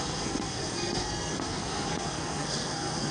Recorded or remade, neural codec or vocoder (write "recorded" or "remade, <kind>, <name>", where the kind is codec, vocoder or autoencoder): remade, codec, SNAC